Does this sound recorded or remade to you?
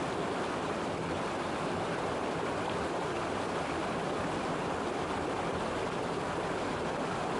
recorded